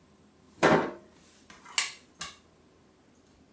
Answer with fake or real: real